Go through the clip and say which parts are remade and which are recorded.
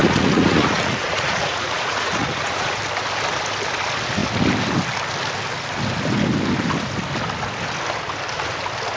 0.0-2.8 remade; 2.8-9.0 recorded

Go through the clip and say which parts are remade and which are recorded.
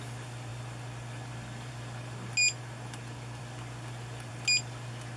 0.0-5.2 recorded